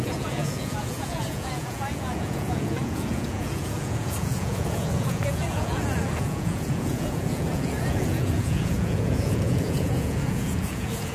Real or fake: fake